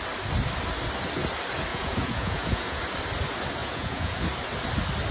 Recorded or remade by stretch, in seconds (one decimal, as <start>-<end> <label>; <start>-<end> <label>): 0.0-1.7 recorded; 1.7-2.8 remade; 2.8-3.6 recorded; 3.6-4.2 remade; 4.2-5.1 recorded